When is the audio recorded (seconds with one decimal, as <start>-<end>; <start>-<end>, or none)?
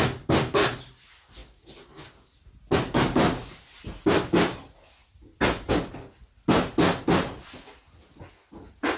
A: 0.0-9.0